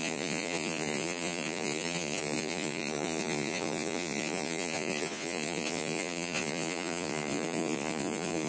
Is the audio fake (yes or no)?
yes